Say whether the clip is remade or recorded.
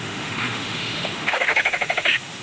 remade